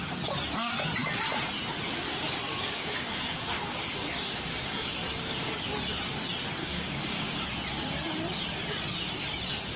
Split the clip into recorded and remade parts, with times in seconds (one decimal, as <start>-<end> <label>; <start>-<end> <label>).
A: 0.0-2.5 recorded; 2.5-5.5 remade; 5.5-6.6 recorded; 6.6-7.4 remade; 7.4-9.8 recorded